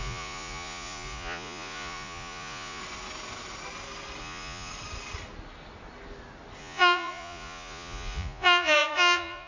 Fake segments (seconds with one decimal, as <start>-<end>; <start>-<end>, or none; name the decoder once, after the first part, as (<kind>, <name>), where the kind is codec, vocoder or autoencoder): 0.0-2.8 (vocoder, Vocos); 4.2-4.7; 6.6-9.5